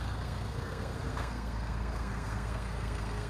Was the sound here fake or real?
fake